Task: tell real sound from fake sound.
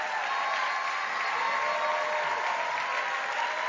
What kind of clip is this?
real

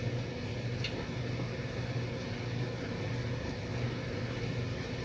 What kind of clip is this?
real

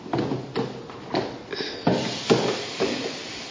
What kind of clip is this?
real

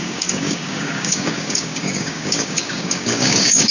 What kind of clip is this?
fake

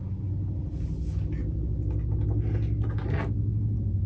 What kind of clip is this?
real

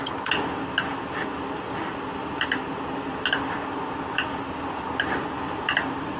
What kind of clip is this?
real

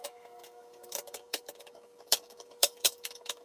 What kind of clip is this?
fake